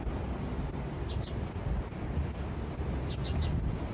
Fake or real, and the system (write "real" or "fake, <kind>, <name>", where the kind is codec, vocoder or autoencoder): real